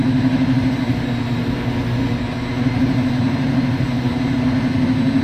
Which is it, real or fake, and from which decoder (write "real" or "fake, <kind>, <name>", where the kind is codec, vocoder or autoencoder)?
real